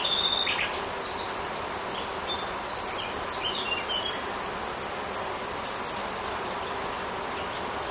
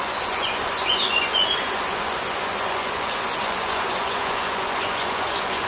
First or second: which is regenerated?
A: second